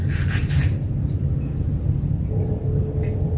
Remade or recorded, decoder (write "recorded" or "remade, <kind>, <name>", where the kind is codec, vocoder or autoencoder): recorded